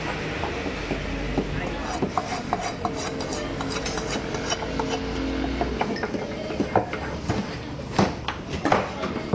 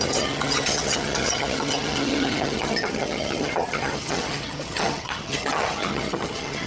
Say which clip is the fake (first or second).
second